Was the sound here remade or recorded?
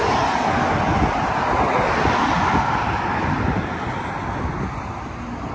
recorded